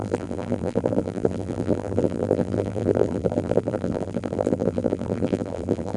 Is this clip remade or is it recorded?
remade